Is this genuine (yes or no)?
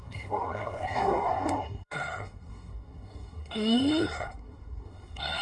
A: no